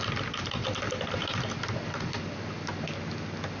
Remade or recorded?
recorded